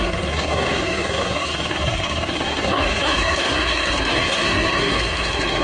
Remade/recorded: remade